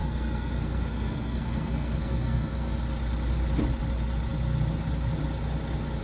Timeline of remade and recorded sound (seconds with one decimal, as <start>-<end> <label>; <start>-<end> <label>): 0.0-2.8 remade; 2.8-6.0 recorded